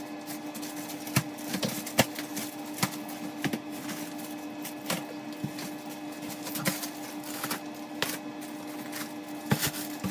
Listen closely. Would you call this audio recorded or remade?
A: recorded